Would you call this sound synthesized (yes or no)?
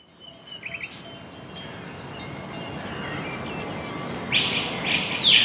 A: no